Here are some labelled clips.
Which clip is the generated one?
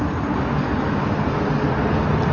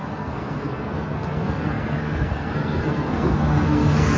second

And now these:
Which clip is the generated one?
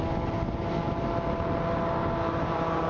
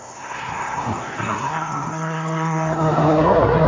second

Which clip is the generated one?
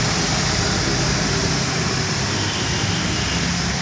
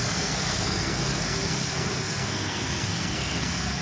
second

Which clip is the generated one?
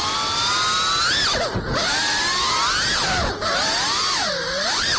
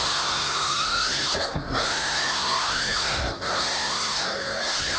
second